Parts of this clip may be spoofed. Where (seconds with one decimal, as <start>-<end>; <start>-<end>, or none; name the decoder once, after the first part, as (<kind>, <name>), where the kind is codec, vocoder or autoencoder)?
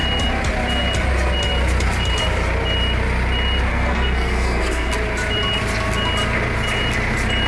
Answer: 3.7-4.9 (codec, SNAC)